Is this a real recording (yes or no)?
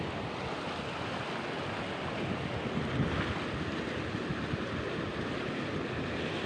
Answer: yes